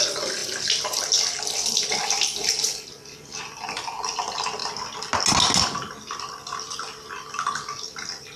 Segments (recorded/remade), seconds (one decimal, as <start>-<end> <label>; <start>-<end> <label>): 0.0-8.4 recorded